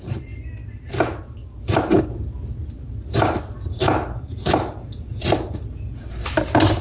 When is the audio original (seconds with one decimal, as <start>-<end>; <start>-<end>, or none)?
0.0-6.8